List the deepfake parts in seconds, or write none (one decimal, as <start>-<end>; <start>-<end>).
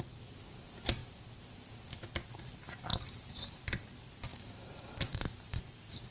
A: 2.9-3.6; 4.3-5.6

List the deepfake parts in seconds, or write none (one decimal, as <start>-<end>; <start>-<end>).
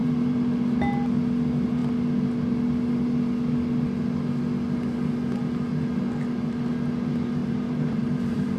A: 0.0-0.5; 7.4-8.6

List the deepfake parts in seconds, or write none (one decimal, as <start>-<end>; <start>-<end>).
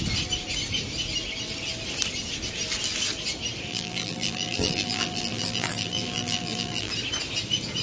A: 3.7-6.9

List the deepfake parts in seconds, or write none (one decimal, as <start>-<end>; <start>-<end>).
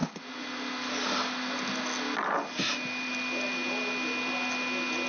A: none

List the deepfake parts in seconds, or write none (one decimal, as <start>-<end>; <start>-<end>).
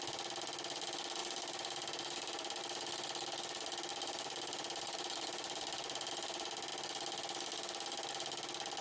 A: 1.2-2.6; 3.9-6.1